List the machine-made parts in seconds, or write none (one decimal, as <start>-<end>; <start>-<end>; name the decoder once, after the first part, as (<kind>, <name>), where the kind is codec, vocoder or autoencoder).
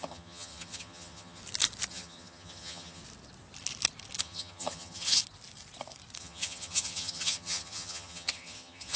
0.0-1.4 (vocoder, HiFi-GAN); 1.9-3.0; 4.2-5.2; 6.2-9.0